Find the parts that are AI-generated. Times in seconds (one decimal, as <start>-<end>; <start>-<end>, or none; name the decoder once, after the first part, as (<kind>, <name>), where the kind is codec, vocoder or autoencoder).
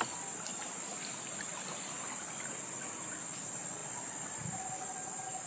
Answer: none